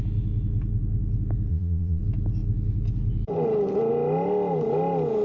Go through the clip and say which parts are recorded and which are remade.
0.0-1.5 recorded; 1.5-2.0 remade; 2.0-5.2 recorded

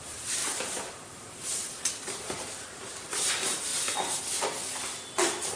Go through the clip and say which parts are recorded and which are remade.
0.0-3.7 remade; 3.7-5.0 recorded; 5.0-5.6 remade

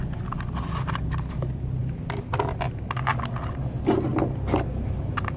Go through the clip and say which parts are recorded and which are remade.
0.0-5.4 recorded